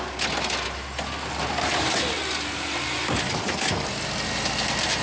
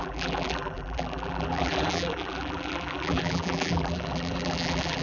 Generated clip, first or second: second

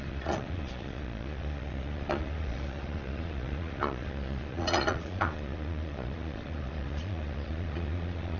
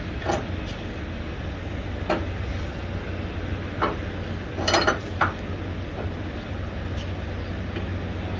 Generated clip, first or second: first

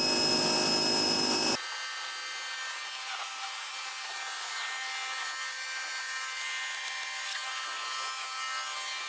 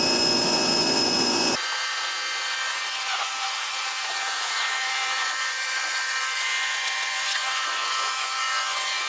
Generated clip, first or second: second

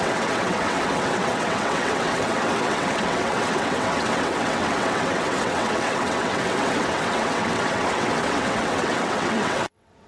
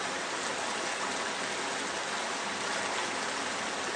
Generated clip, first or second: first